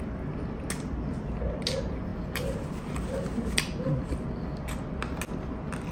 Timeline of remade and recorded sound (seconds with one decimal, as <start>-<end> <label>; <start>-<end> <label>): 0.0-2.1 recorded; 2.1-3.1 remade; 3.1-5.9 recorded